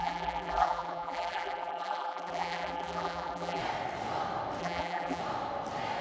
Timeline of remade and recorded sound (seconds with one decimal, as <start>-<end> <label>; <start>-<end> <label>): 0.0-3.6 remade; 3.6-4.6 recorded; 4.6-5.2 remade; 5.2-6.0 recorded